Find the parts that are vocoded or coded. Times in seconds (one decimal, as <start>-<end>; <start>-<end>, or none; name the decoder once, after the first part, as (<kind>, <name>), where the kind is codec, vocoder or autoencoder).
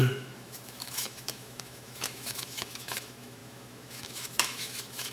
0.0-5.1 (autoencoder, DAC-VAE)